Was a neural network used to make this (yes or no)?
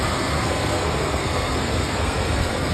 yes